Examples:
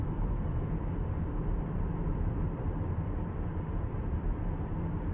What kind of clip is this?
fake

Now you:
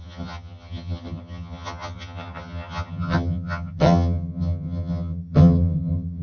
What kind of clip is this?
fake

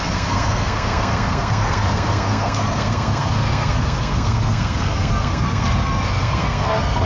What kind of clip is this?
fake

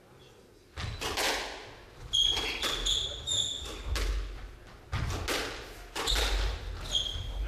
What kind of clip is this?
real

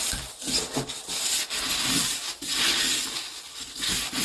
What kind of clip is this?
real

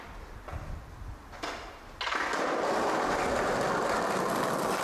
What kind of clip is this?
real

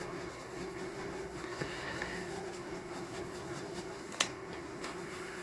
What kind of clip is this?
fake